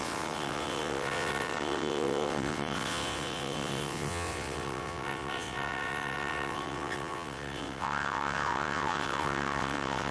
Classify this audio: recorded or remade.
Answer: remade